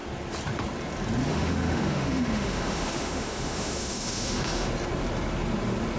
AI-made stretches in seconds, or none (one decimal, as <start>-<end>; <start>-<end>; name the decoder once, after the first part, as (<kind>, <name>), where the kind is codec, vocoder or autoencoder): 1.3-4.7 (autoencoder, DAC-VAE)